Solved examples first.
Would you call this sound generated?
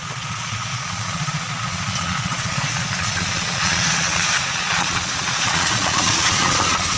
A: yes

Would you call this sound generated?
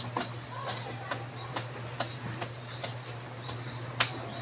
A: no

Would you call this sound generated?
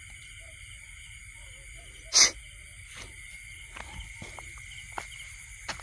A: no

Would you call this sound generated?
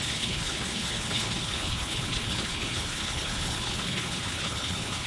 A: yes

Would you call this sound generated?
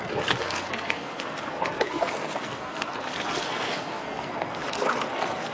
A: yes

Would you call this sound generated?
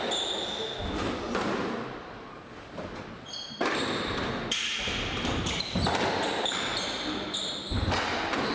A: no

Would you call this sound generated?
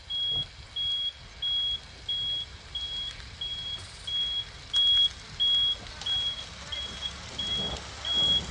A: no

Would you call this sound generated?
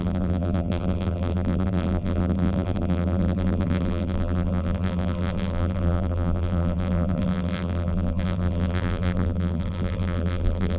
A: yes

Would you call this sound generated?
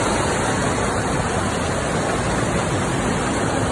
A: no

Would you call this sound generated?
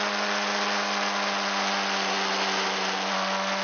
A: no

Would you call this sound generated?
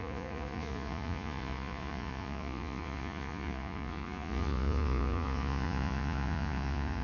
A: yes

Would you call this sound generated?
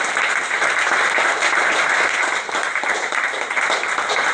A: no